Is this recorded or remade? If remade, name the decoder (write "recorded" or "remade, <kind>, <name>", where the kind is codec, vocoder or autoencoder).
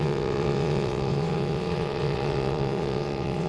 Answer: remade, vocoder, WaveNeXt